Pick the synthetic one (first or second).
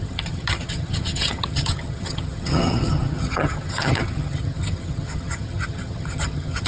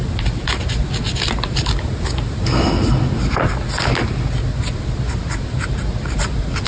first